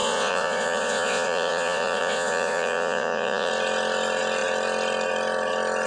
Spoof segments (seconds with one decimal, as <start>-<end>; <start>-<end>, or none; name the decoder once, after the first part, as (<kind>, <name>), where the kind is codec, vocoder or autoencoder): 0.0-3.5 (vocoder, Vocos)